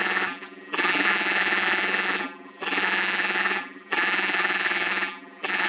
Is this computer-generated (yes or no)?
yes